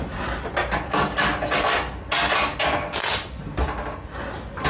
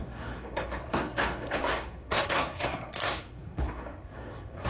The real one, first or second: first